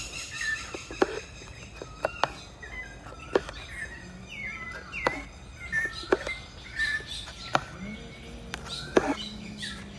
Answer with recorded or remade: recorded